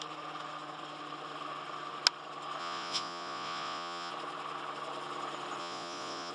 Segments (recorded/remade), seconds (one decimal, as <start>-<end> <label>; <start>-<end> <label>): 0.0-2.6 recorded; 2.6-4.1 remade; 4.1-5.6 recorded; 5.6-6.3 remade